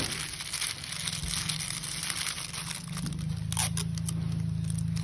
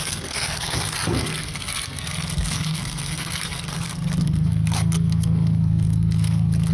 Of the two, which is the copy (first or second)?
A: second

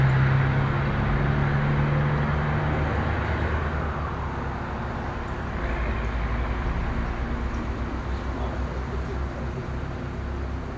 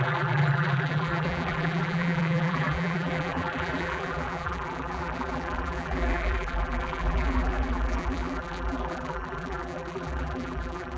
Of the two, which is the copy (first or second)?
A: second